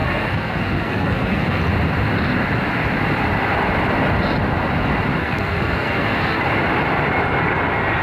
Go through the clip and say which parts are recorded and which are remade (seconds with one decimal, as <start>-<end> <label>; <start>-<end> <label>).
0.0-1.6 remade; 1.6-5.2 recorded; 5.2-6.4 remade; 6.4-8.0 recorded